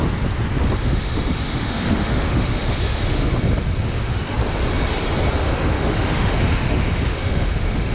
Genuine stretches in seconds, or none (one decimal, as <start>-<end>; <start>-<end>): 0.0-0.8; 3.3-3.8; 4.4-5.4